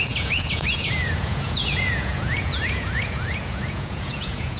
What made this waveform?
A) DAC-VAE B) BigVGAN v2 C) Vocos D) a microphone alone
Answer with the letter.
C